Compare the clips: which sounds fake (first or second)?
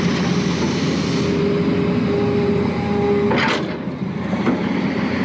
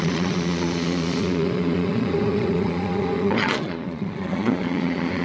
second